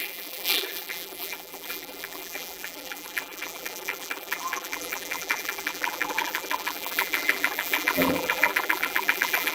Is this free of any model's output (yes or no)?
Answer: no